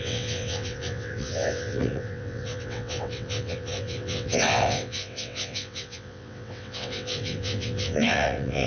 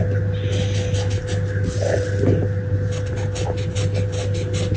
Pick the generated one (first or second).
first